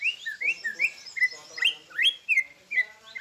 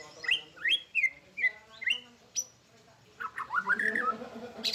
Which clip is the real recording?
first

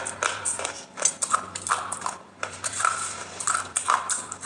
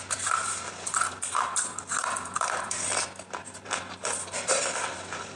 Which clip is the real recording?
second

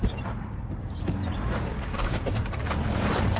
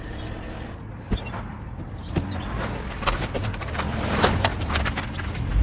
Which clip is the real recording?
second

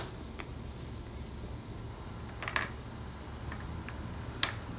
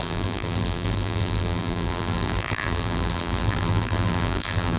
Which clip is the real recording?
first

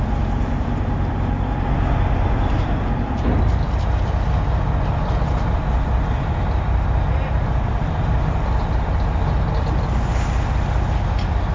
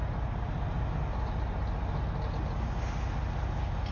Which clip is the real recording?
second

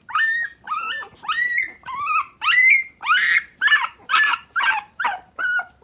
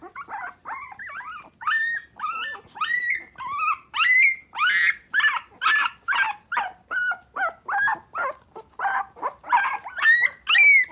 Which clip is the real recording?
second